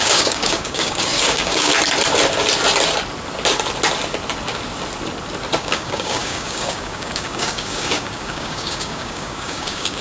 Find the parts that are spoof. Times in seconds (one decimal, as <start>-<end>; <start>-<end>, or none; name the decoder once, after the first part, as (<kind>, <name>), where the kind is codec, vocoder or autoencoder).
0.0-1.7 (codec, DAC); 5.6-10.0